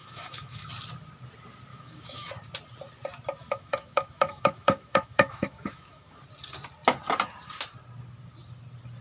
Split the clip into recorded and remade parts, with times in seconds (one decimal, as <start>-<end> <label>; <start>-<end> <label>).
0.0-0.7 remade; 0.7-1.7 recorded; 1.7-2.3 remade; 2.3-3.4 recorded; 3.4-6.2 remade; 6.2-9.0 recorded